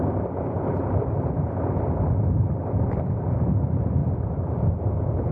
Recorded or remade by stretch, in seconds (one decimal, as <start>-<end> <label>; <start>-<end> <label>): 0.0-5.3 recorded

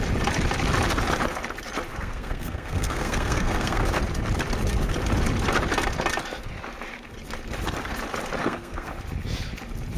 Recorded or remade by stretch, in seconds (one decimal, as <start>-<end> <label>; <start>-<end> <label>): 0.0-1.9 recorded; 1.9-4.0 remade; 4.0-8.4 recorded; 8.4-8.9 remade; 8.9-10.0 recorded

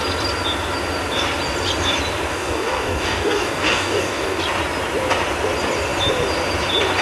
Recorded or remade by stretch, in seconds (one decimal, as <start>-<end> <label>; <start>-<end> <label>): 0.0-2.3 recorded; 2.3-4.4 remade; 4.4-7.0 recorded

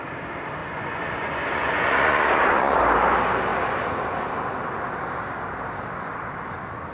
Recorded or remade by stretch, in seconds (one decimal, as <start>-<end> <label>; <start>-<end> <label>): 0.0-0.6 recorded; 0.6-2.8 remade; 2.8-6.9 recorded

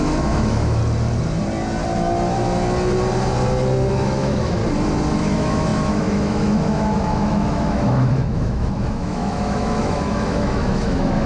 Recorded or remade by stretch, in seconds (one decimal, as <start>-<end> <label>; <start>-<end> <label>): 0.0-0.8 remade; 0.8-3.9 recorded; 3.9-4.6 remade; 4.6-5.2 recorded; 5.2-11.3 remade

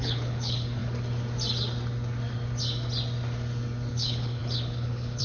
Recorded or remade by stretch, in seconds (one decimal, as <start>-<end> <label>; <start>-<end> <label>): 0.0-0.8 remade; 0.8-3.9 recorded; 3.9-5.2 remade